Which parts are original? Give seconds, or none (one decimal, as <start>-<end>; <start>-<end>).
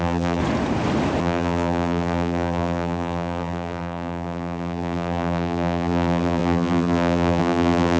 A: 0.4-1.2